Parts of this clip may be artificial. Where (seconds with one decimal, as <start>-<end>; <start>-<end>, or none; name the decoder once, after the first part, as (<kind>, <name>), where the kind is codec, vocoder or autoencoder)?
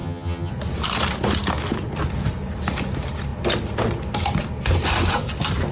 0.0-0.5 (vocoder, HiFi-GAN)